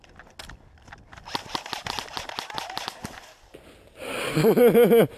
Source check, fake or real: real